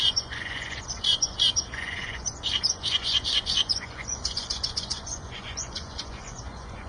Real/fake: fake